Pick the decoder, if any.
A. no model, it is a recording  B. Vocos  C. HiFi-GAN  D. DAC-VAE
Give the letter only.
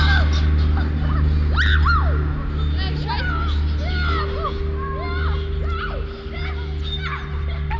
A